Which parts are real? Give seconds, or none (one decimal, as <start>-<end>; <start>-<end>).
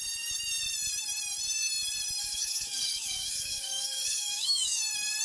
0.0-2.2; 4.8-5.2